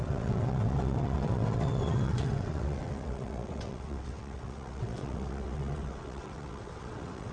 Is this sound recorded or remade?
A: remade